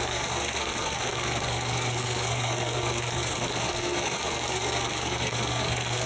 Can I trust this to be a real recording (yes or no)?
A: no